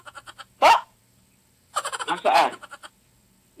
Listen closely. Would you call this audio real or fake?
fake